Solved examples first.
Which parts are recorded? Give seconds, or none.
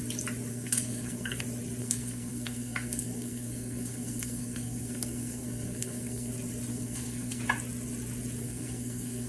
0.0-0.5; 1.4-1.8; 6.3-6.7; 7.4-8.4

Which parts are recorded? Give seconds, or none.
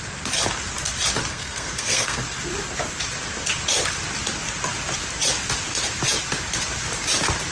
0.0-1.3; 2.2-7.5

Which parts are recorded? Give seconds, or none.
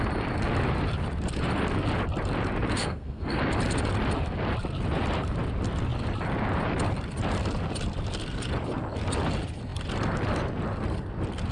0.0-2.8; 3.4-11.5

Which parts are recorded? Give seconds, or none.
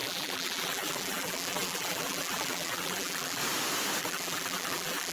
3.4-4.0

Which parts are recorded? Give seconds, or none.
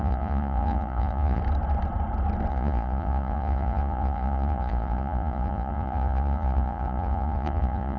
1.4-2.5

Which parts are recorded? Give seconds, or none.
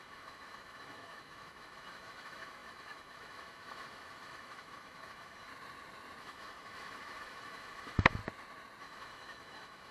5.5-6.2; 8.2-8.8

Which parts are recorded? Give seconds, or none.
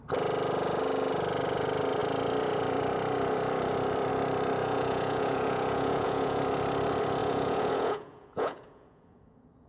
0.0-4.6; 6.4-7.2